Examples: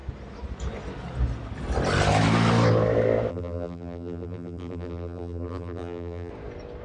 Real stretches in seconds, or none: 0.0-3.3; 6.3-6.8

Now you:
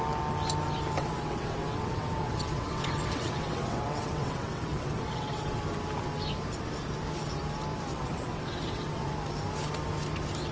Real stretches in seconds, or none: 0.0-1.0; 5.6-7.9; 9.1-10.5

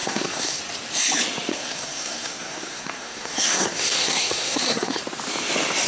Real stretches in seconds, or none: 0.6-1.5; 5.0-5.9

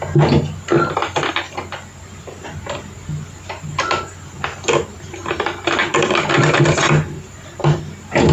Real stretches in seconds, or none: 0.0-8.3

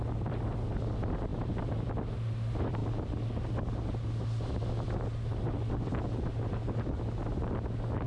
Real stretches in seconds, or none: 0.0-8.1

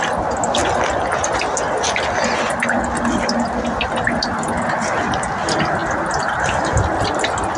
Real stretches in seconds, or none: 0.0-7.6

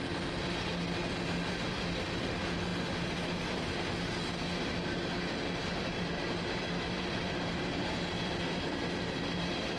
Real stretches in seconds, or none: 0.0-9.8